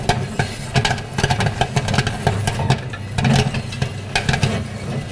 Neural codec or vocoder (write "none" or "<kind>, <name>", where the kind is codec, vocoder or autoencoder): none